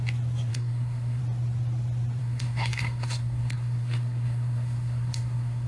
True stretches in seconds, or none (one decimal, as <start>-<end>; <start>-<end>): 0.0-0.5; 1.2-2.2